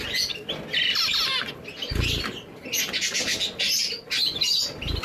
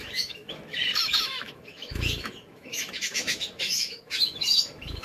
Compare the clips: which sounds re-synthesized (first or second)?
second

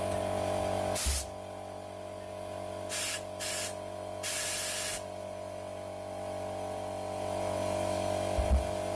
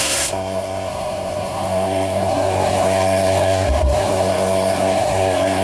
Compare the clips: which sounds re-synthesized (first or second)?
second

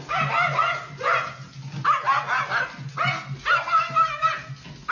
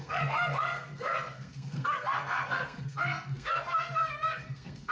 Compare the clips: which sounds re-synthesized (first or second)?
second